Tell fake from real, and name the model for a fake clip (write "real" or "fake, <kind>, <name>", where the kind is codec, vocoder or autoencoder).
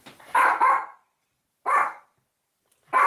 real